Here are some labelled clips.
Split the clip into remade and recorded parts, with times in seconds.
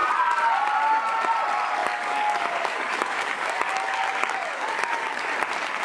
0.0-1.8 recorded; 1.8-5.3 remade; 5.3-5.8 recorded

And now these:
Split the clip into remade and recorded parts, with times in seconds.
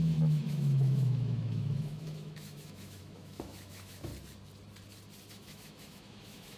0.0-4.1 remade; 4.1-5.3 recorded; 5.3-6.6 remade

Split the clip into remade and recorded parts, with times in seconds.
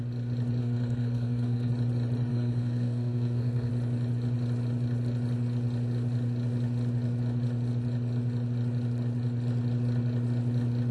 0.0-0.6 recorded; 0.6-1.7 remade; 1.7-2.3 recorded; 2.3-3.7 remade; 3.7-10.9 recorded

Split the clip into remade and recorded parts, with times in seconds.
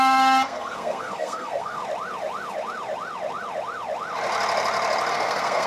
0.0-1.8 remade; 1.8-5.1 recorded; 5.1-5.7 remade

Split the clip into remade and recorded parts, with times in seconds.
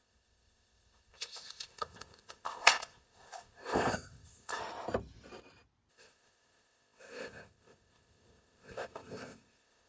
0.0-4.6 remade; 4.6-5.9 recorded; 5.9-9.9 remade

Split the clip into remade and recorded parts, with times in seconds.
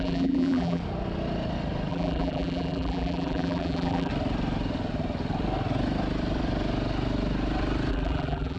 0.0-0.8 remade; 0.8-1.9 recorded; 1.9-4.1 remade; 4.1-7.9 recorded; 7.9-8.6 remade